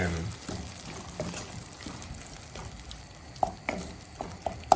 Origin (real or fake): real